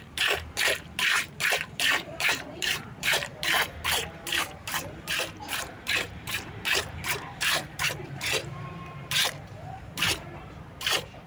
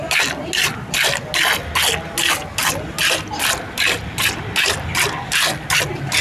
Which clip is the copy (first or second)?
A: first